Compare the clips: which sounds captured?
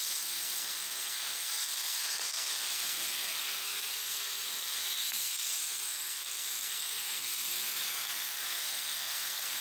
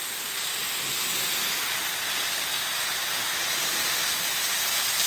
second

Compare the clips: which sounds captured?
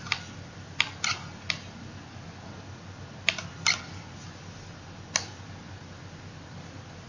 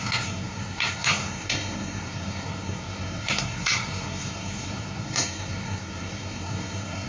first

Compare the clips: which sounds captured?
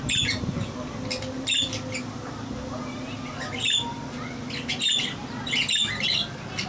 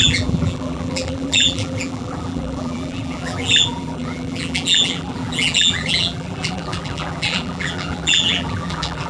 first